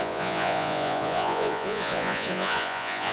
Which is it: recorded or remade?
remade